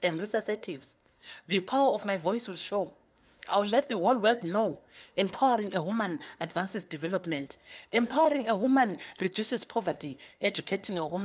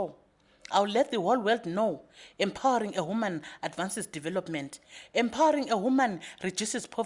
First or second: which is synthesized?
first